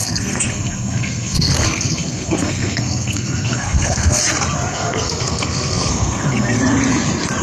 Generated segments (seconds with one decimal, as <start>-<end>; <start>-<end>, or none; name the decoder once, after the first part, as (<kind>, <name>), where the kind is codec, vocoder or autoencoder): 0.0-4.2 (codec, SNAC); 4.7-6.6